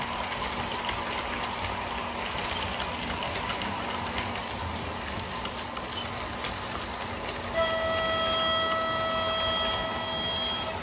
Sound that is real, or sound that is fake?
real